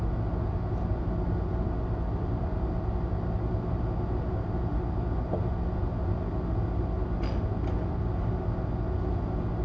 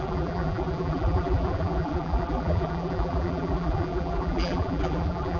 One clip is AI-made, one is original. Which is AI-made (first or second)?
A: second